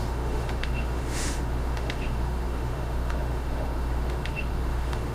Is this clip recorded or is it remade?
remade